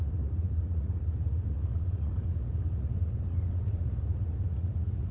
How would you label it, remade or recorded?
remade